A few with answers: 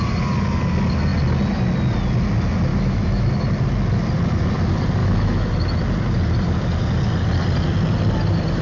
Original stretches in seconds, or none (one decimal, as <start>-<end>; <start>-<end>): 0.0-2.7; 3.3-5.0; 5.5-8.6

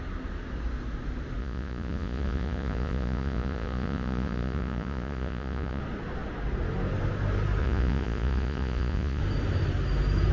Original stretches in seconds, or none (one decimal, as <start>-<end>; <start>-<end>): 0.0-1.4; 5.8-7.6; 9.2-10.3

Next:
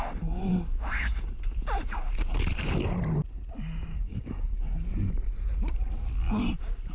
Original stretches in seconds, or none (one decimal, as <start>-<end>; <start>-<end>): 0.0-3.9; 4.4-6.9

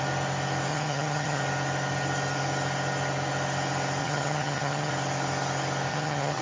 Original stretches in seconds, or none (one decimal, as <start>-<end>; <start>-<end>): 0.0-0.7; 1.4-4.0; 4.9-5.9

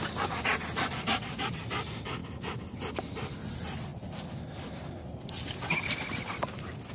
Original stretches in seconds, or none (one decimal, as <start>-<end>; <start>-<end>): 0.0-6.9

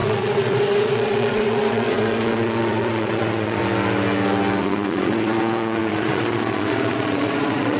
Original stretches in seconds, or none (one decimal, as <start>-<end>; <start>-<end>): 3.6-4.6

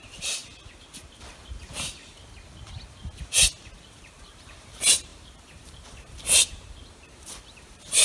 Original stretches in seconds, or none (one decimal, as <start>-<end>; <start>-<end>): 0.4-1.6; 2.0-3.7